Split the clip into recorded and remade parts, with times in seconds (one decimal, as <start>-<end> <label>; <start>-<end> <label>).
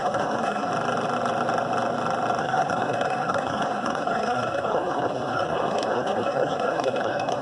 0.0-0.7 remade; 0.7-2.4 recorded; 2.4-7.4 remade